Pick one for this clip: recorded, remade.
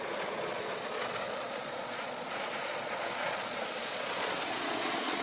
remade